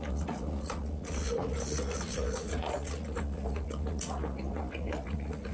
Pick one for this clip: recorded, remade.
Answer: remade